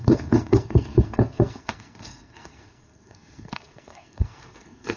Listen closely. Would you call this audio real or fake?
fake